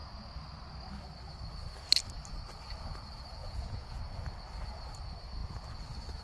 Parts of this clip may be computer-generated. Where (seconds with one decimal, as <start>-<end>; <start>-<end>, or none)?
3.4-4.0